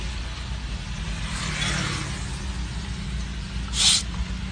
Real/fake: real